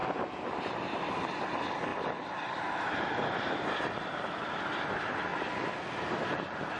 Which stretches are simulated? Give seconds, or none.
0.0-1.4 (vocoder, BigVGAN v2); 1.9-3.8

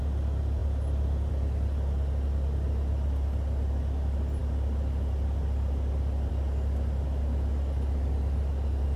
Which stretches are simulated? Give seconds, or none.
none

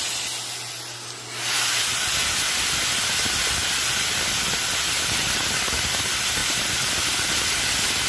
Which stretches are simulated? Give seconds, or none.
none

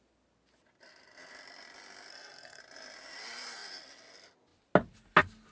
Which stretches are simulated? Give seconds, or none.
2.1-2.6 (codec, SNAC)

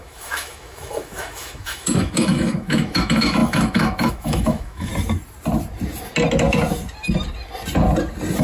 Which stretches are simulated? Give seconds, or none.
0.0-4.9 (autoencoder, DAC-VAE)